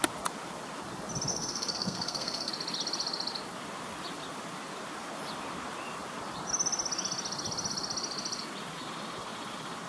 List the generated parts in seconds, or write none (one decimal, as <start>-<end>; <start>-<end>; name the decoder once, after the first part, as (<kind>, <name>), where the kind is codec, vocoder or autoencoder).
1.3-2.5 (codec, SNAC)